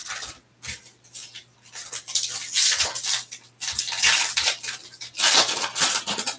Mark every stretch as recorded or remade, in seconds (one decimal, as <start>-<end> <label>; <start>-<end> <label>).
0.0-6.4 recorded

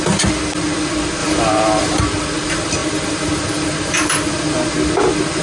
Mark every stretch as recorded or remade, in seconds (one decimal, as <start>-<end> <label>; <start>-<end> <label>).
0.0-1.2 recorded; 1.2-2.0 remade; 2.0-2.8 recorded; 2.8-4.3 remade; 4.3-5.4 recorded

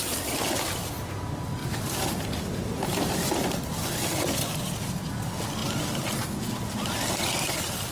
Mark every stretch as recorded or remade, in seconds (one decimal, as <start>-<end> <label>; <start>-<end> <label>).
0.0-7.9 recorded